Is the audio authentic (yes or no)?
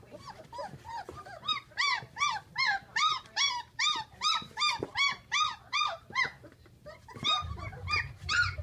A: no